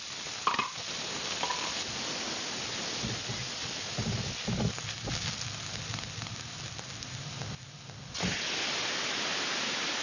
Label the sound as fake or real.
real